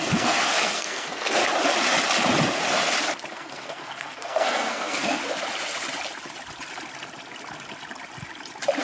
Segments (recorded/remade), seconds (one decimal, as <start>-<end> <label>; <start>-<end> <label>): 0.0-1.4 remade; 1.4-3.3 recorded; 3.3-5.2 remade; 5.2-8.8 recorded